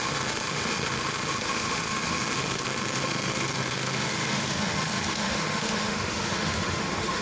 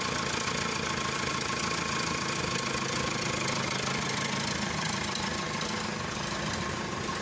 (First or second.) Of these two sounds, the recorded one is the second